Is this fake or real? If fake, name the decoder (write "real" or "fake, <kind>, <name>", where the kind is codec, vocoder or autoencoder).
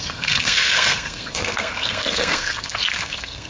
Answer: fake, codec, SNAC